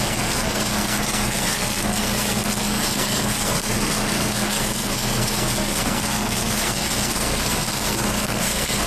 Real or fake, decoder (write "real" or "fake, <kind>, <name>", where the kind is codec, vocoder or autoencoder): fake, codec, SNAC